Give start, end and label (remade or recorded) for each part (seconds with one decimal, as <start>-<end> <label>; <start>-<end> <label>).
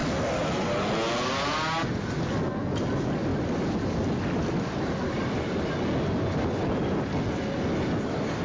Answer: 0.0-8.4 recorded